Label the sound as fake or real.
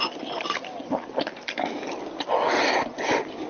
real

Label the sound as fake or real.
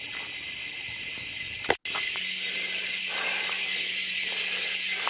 real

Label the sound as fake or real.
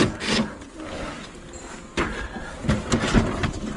real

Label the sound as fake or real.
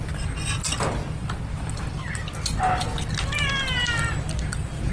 real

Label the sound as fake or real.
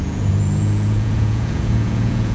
fake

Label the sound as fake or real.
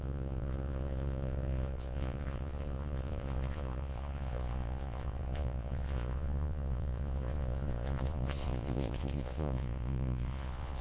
fake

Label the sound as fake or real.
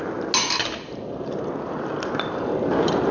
real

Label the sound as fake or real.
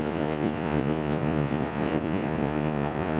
fake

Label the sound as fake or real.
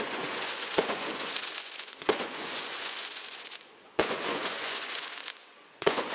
fake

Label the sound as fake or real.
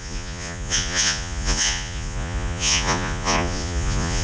fake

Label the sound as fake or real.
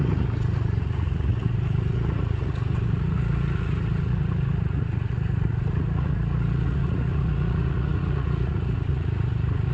fake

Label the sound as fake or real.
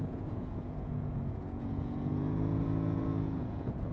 fake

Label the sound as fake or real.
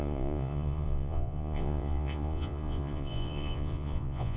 fake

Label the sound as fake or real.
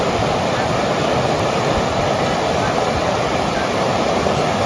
real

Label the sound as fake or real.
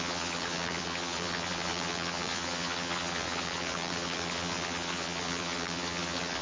fake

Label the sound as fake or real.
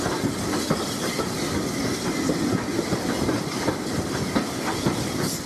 real